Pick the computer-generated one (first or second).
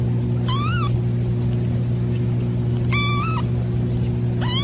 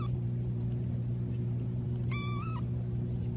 second